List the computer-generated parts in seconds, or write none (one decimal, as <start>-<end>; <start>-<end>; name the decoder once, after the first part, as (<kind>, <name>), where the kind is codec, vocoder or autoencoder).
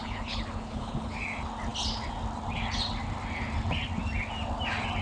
0.0-1.2 (codec, HILCodec)